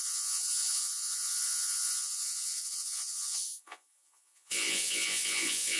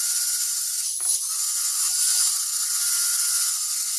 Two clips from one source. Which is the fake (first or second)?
first